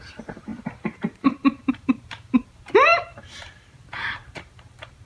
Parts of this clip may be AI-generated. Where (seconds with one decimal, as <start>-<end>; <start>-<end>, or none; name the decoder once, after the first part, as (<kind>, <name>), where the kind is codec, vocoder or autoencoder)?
0.0-5.1 (vocoder, BigVGAN v2)